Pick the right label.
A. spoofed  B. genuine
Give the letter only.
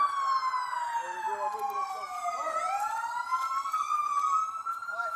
B